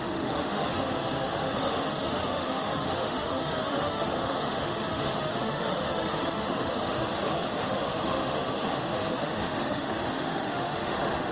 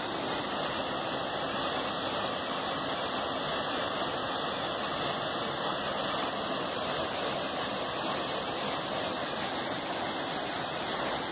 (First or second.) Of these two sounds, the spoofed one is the first